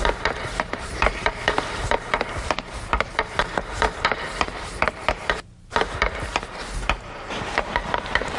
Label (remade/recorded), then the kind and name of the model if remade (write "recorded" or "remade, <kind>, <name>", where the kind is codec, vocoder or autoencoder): remade, vocoder, BigVGAN v2